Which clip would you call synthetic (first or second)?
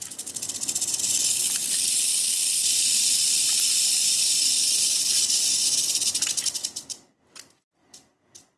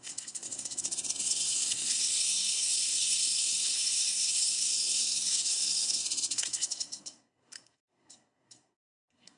second